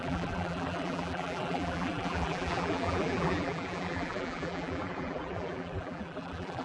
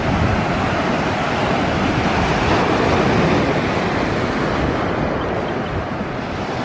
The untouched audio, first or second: second